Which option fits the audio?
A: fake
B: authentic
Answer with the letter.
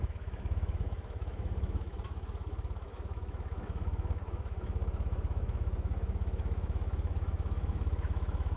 A